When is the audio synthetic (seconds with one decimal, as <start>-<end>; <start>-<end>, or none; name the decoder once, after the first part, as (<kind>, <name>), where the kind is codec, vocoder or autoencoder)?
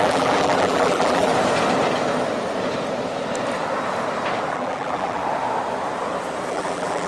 0.0-1.3 (vocoder, BigVGAN v2); 4.5-5.2; 6.5-7.1